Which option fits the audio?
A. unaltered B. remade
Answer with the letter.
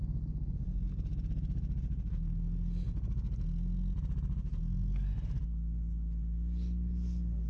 A